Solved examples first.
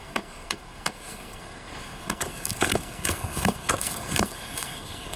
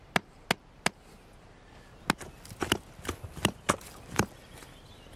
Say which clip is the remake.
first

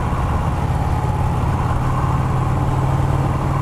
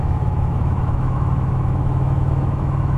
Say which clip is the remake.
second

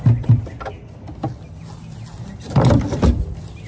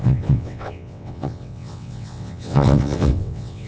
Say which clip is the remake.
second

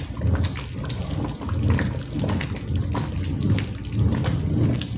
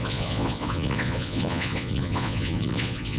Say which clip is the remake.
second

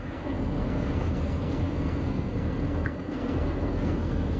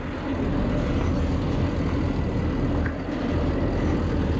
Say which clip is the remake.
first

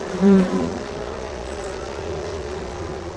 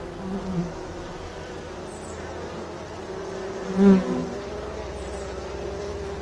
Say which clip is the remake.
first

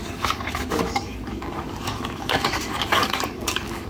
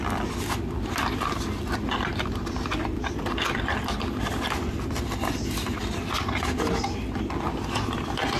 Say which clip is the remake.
first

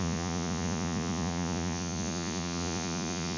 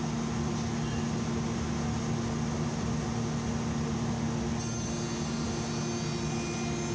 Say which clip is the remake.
first